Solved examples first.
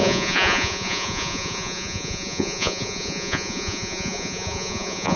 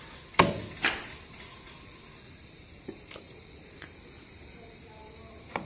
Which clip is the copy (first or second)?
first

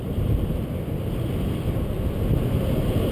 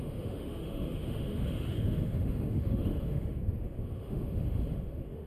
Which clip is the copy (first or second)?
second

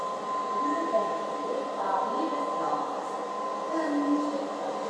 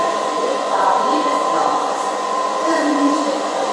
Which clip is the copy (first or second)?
second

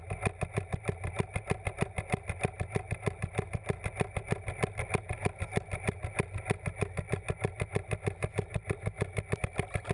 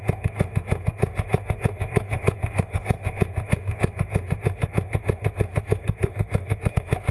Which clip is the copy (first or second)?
second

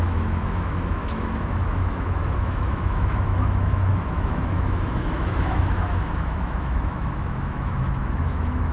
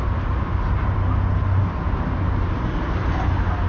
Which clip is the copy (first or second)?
first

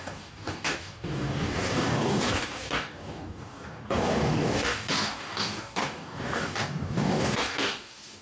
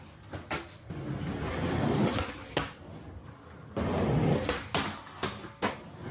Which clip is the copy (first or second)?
first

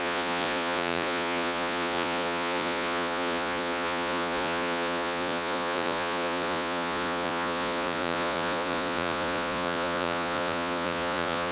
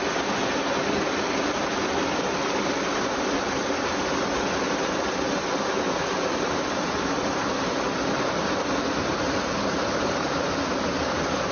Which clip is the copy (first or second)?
first